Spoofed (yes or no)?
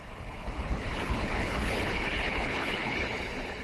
yes